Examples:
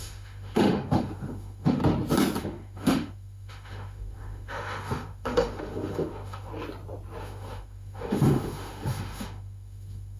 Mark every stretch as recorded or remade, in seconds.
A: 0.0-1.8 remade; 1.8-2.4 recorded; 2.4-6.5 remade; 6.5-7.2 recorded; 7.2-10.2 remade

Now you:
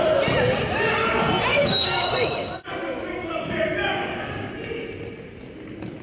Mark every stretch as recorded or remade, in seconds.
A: 0.0-1.5 recorded; 1.5-2.5 remade; 2.5-3.1 recorded; 3.1-4.5 remade; 4.5-6.0 recorded

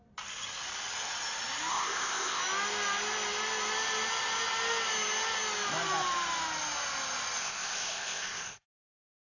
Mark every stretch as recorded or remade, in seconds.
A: 0.0-1.7 recorded; 1.7-2.4 remade; 2.4-7.4 recorded; 7.4-8.6 remade; 8.6-9.2 recorded

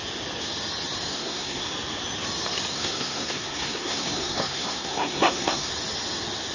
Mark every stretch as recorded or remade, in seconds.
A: 0.0-1.1 recorded; 1.1-1.7 remade; 1.7-2.7 recorded; 2.7-5.7 remade; 5.7-6.5 recorded

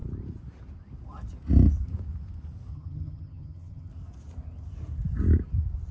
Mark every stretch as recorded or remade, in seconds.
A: 0.0-2.7 recorded; 2.7-3.9 remade; 3.9-5.9 recorded